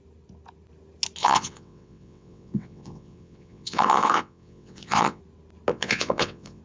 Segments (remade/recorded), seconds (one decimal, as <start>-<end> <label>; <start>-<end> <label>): 0.0-1.2 recorded; 1.2-5.2 remade; 5.2-5.7 recorded; 5.7-6.6 remade